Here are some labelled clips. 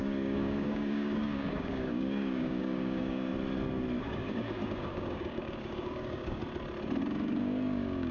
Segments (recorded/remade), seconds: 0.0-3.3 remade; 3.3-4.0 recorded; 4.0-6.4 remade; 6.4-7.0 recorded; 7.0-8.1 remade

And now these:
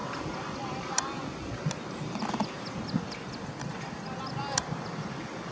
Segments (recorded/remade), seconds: 0.0-5.5 recorded

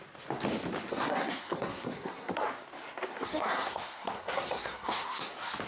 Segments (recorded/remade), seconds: 0.0-0.9 recorded; 0.9-2.5 remade; 2.5-3.1 recorded; 3.1-5.3 remade; 5.3-5.7 recorded

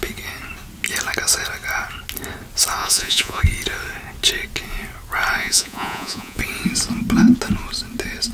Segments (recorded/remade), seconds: 0.0-2.8 recorded; 2.8-3.4 remade; 3.4-5.4 recorded; 5.4-6.4 remade; 6.4-8.3 recorded

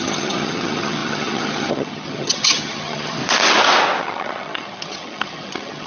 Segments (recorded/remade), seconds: 0.0-3.2 remade; 3.2-4.0 recorded; 4.0-5.9 remade